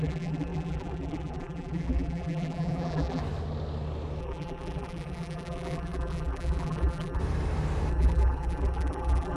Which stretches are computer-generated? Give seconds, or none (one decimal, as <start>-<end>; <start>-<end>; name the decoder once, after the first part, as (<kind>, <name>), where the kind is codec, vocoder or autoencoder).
0.0-3.2 (vocoder, BigVGAN v2); 4.2-7.2; 7.9-9.4